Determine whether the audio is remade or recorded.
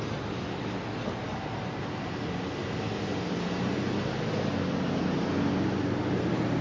recorded